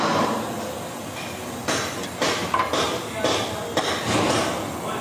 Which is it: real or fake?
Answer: real